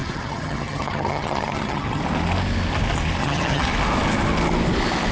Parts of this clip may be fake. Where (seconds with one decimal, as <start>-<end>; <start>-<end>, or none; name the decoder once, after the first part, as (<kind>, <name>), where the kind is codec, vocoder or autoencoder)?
0.0-2.0 (vocoder, HiFi-GAN); 3.2-3.7